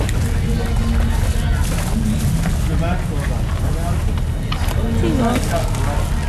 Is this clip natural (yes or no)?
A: yes